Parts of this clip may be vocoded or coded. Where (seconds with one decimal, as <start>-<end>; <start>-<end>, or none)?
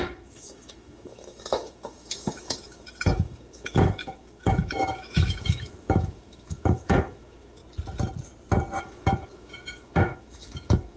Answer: 0.0-7.6; 8.8-11.0